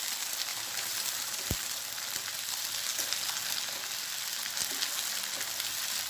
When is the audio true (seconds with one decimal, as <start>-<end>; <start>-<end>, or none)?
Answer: 0.0-0.5; 1.4-6.1